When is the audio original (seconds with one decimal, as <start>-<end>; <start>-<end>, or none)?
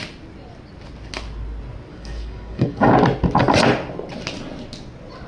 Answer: 0.0-1.9; 2.9-5.3